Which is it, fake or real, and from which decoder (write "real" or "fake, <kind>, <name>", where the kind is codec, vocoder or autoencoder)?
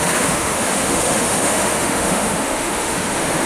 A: fake, autoencoder, DAC-VAE